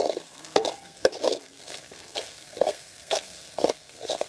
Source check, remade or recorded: remade